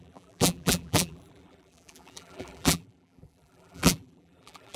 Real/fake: fake